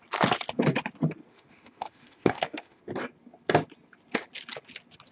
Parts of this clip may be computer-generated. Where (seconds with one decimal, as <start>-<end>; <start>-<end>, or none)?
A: 1.3-2.8